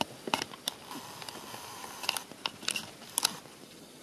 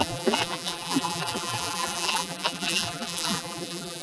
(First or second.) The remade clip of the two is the second